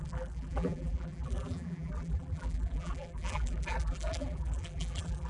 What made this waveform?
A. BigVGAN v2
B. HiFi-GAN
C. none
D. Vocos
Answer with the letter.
A